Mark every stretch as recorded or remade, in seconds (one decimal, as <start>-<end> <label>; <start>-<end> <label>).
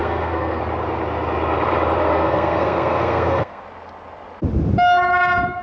0.0-0.6 remade; 0.6-2.0 recorded; 2.0-3.6 remade; 3.6-5.6 recorded